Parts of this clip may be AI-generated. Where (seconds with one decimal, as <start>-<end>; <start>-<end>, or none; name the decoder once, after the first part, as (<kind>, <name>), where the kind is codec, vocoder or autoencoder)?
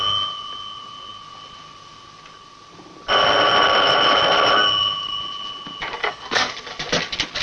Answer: 6.0-6.5 (codec, SNAC)